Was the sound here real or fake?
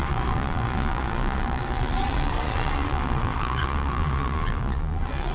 fake